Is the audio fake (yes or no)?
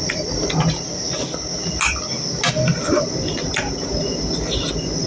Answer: no